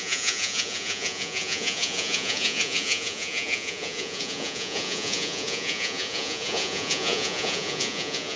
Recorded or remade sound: remade